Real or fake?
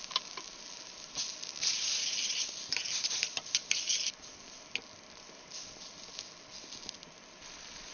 real